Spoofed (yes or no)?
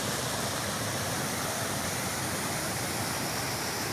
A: no